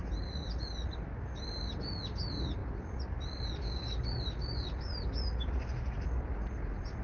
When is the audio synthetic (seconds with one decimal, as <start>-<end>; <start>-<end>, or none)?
none